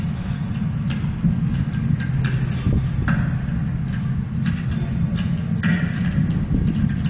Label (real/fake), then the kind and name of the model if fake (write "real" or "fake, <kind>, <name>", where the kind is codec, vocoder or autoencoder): real